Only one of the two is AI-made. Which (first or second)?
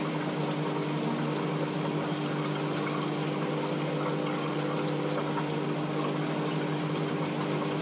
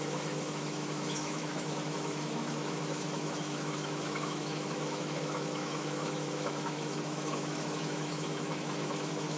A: second